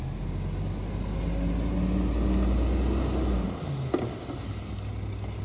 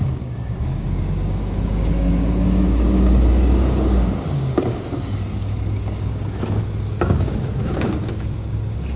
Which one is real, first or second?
first